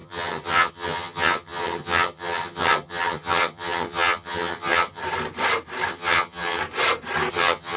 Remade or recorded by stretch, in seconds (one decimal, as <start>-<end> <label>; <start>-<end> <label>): 0.0-5.0 remade; 5.0-5.9 recorded; 5.9-6.6 remade; 6.6-7.3 recorded; 7.3-7.8 remade